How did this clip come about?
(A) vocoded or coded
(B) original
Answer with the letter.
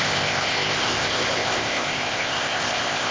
A